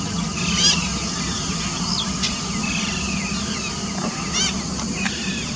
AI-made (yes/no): no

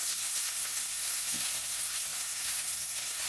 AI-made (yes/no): yes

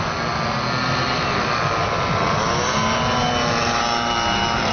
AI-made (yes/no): no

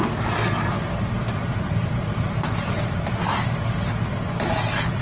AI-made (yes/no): no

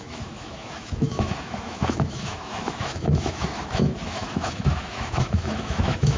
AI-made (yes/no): yes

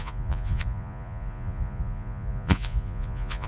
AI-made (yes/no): yes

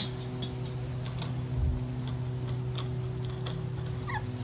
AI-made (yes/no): no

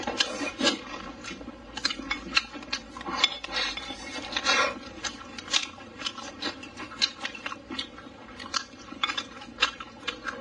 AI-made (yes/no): yes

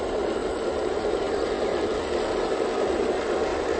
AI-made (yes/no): no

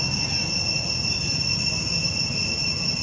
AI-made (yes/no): no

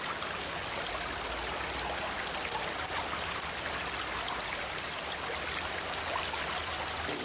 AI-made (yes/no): no